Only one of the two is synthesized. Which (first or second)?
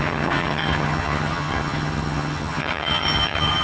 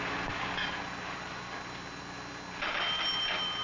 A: first